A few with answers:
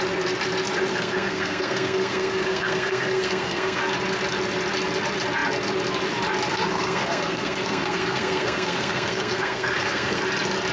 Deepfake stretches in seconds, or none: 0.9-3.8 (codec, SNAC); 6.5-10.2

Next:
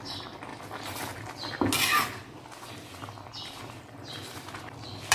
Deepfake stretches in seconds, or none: none

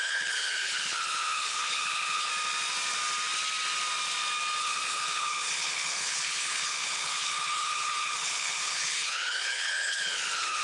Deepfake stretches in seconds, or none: 0.0-2.3 (codec, HILCodec); 4.6-10.6

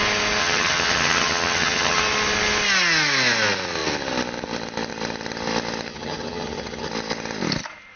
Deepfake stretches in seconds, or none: 0.4-2.0 (vocoder, HiFi-GAN); 5.9-6.9